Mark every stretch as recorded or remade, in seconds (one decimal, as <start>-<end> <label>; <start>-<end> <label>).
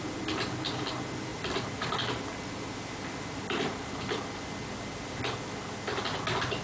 0.0-1.3 recorded; 1.3-5.2 remade; 5.2-6.6 recorded